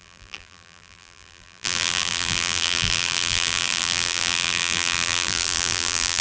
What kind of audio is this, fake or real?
fake